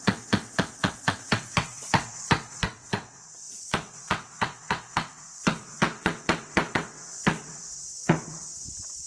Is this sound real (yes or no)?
no